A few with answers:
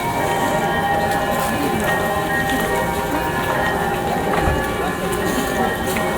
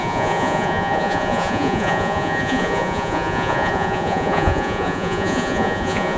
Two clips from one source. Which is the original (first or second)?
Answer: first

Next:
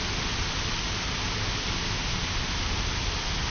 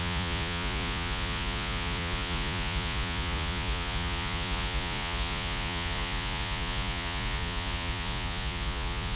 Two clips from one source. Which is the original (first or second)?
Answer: first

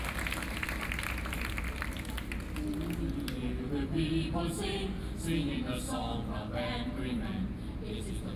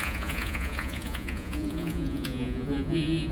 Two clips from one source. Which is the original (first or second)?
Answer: first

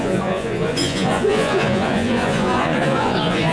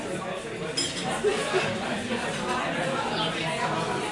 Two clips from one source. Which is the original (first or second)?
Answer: second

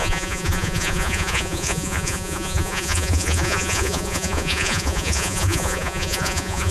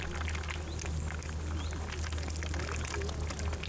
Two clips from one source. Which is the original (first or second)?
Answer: second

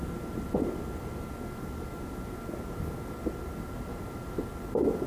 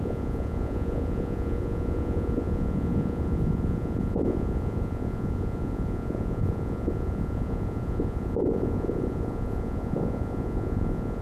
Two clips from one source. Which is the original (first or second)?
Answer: first